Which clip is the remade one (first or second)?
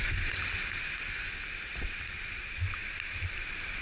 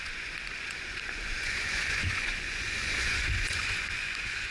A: second